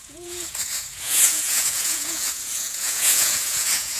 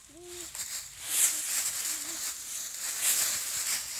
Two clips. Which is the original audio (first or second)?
second